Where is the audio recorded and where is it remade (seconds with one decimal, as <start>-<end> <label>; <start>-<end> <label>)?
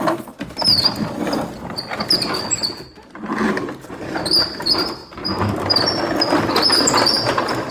0.0-5.0 recorded; 5.0-5.8 remade; 5.8-7.7 recorded